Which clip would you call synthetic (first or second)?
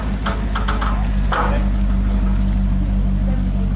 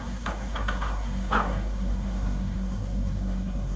second